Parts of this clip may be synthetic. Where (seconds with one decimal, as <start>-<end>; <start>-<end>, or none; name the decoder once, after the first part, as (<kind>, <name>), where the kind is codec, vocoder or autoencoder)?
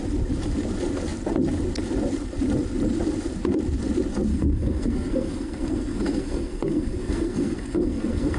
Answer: 4.3-8.4 (codec, SNAC)